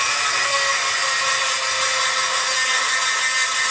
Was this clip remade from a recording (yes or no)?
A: no